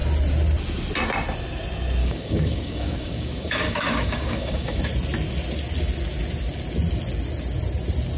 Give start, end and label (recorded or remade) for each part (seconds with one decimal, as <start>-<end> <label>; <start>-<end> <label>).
0.0-2.0 recorded; 2.0-4.8 remade; 4.8-8.2 recorded